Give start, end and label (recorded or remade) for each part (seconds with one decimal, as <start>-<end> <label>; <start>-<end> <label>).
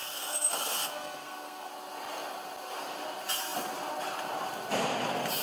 0.0-1.7 remade; 1.7-5.4 recorded